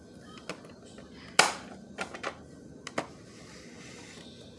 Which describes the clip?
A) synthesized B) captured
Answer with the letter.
B